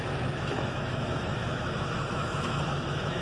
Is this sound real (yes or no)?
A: no